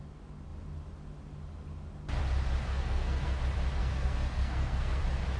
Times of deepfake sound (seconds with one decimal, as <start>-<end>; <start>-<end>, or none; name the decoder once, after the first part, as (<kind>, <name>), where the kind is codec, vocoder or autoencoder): 2.7-3.4 (codec, SNAC); 3.8-5.0